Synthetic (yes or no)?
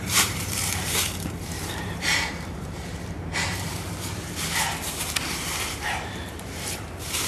yes